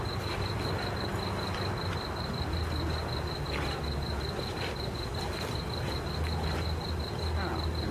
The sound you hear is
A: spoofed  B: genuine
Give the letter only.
B